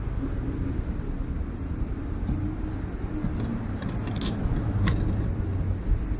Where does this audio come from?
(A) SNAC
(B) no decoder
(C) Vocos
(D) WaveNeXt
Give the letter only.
B